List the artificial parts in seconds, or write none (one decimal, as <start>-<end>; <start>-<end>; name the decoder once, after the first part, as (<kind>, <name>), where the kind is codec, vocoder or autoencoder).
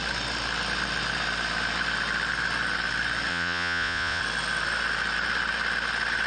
3.3-4.2 (vocoder, Vocos)